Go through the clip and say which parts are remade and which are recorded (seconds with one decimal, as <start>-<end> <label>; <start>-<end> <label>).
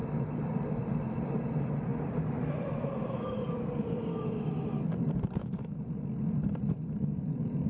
0.0-7.7 recorded